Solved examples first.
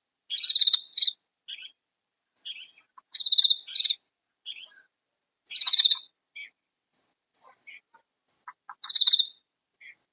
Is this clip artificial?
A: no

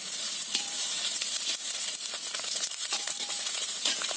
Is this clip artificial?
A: yes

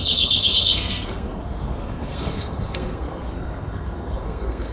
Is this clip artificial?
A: yes